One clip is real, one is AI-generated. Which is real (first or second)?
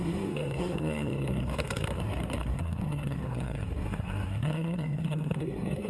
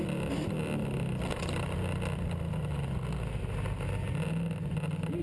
second